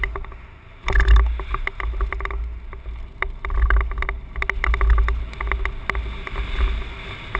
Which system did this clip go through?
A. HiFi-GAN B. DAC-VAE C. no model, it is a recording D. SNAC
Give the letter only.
C